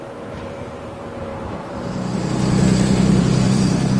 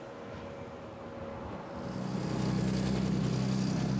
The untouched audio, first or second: second